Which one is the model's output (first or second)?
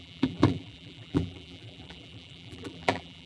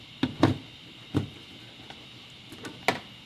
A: first